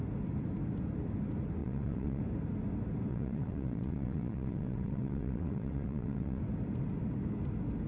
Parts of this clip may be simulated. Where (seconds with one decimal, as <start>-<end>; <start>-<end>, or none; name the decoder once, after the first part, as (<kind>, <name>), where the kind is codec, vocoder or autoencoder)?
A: 1.6-2.2 (vocoder, WaveNeXt); 3.1-6.4